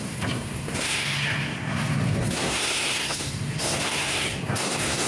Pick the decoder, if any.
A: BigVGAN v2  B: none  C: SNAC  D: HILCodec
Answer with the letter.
C